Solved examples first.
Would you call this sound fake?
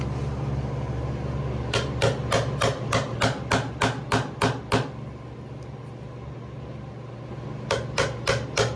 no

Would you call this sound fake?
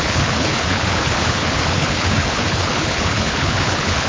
yes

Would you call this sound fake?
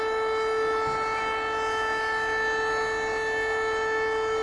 no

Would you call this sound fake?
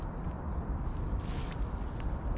no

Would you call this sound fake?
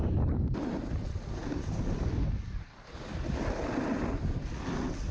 no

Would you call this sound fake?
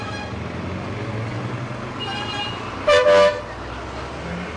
no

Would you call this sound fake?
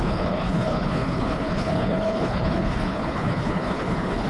yes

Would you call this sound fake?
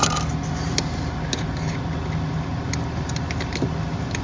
no